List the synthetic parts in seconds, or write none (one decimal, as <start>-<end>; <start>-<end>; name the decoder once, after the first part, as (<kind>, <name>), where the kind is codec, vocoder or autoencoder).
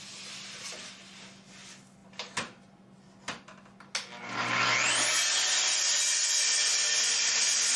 none